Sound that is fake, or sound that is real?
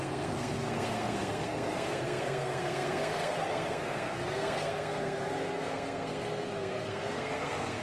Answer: fake